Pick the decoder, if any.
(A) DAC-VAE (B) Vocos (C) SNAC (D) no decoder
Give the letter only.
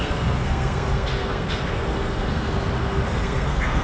C